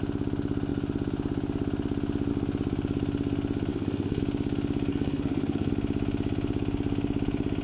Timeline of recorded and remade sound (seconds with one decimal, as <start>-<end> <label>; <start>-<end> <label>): 0.0-3.7 recorded; 3.7-4.2 remade; 4.2-4.9 recorded; 4.9-5.7 remade; 5.7-7.6 recorded